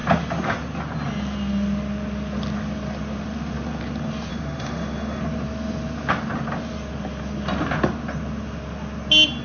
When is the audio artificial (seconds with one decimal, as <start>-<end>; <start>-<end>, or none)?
4.3-5.2